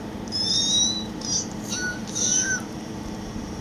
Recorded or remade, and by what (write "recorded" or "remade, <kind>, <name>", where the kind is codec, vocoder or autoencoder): remade, vocoder, BigVGAN v2